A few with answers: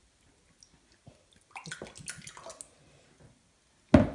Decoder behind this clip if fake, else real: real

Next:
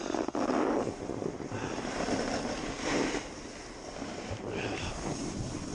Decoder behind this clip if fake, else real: real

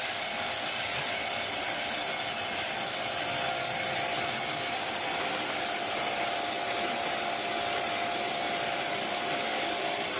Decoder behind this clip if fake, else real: real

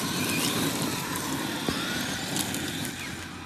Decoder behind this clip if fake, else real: real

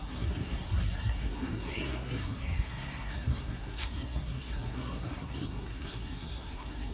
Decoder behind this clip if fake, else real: fake, codec, SNAC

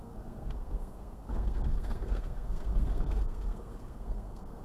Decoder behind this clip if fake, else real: fake, codec, SNAC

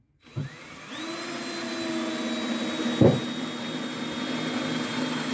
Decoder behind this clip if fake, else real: real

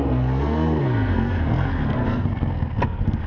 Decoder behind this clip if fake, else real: fake, codec, SNAC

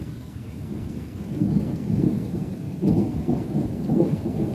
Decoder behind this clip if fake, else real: fake, codec, SNAC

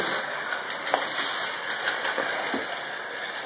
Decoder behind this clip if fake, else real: real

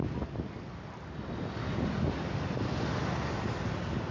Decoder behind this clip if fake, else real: real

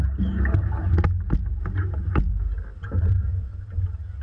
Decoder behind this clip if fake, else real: real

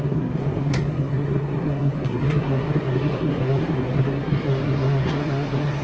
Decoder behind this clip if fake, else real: fake, codec, SNAC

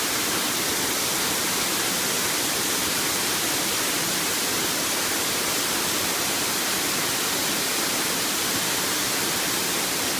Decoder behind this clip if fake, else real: real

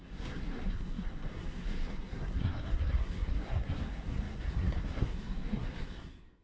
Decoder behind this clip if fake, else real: fake, codec, SNAC